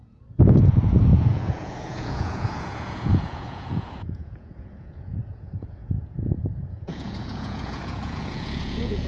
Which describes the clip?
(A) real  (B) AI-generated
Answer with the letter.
B